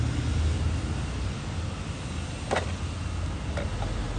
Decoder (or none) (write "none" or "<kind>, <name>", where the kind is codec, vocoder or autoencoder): none